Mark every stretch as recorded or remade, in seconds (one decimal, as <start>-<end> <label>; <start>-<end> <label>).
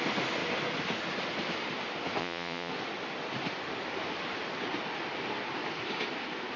0.0-2.2 recorded; 2.2-2.7 remade; 2.7-6.6 recorded